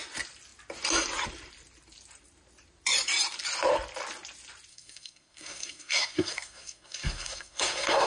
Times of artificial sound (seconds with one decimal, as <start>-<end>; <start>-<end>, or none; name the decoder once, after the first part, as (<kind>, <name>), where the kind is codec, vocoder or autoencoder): 4.7-8.1 (codec, SNAC)